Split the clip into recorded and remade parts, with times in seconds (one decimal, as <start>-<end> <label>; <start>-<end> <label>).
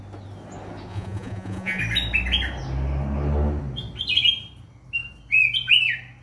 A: 0.0-0.9 recorded; 0.9-1.8 remade; 1.8-6.2 recorded